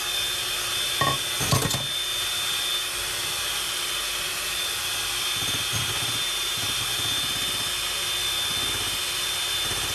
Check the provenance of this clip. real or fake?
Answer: real